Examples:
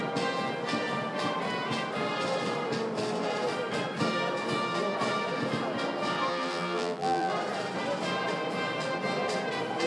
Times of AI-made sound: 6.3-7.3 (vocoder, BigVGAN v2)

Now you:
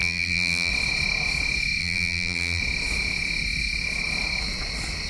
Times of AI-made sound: 0.0-0.7 (vocoder, BigVGAN v2); 1.8-2.6

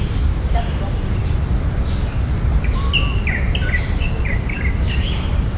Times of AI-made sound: 0.0-1.2 (vocoder, BigVGAN v2); 4.2-5.6

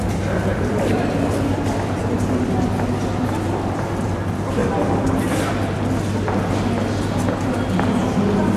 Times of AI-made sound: 0.5-1.6 (vocoder, BigVGAN v2); 4.6-5.8

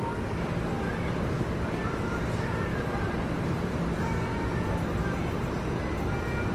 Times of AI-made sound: 2.7-4.3 (vocoder, BigVGAN v2)